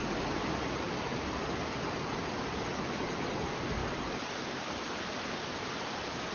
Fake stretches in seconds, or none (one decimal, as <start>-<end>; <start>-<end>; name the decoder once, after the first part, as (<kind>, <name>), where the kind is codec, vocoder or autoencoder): 3.0-3.8 (vocoder, BigVGAN v2); 4.4-6.3